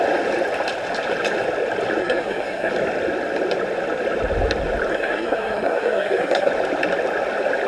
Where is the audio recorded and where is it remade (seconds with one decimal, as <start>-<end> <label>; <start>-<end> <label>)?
0.0-2.0 recorded; 2.0-2.7 remade; 2.7-4.9 recorded; 4.9-6.5 remade; 6.5-7.7 recorded